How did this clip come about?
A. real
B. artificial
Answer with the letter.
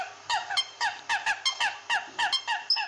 A